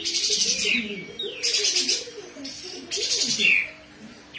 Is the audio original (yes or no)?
yes